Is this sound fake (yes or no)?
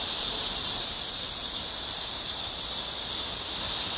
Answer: no